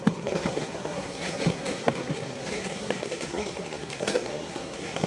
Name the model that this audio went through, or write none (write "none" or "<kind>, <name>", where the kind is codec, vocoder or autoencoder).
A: codec, SNAC